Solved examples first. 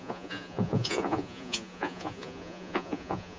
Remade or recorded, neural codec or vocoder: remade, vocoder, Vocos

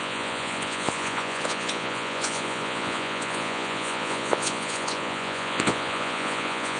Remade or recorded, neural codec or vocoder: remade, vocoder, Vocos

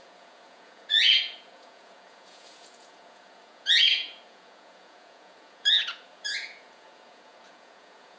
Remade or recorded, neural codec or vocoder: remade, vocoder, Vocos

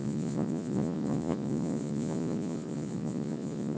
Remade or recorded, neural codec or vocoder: remade, vocoder, Vocos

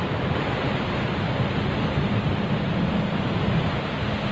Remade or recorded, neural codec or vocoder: recorded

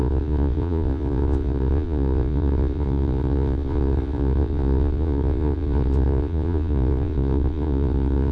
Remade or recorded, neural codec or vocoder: remade, vocoder, Vocos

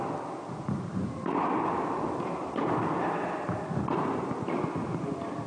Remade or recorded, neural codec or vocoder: recorded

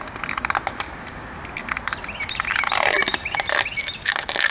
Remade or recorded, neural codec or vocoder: recorded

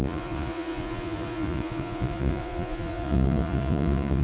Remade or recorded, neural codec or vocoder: remade, vocoder, Vocos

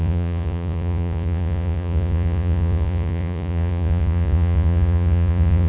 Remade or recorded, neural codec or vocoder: remade, vocoder, Vocos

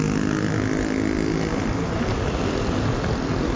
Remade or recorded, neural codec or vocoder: recorded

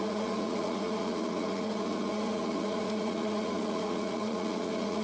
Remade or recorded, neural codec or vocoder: remade, vocoder, Vocos